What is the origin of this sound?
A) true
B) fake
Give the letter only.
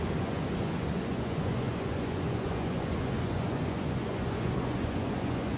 B